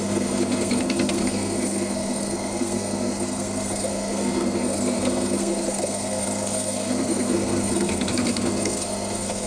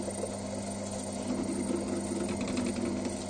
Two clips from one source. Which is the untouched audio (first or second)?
second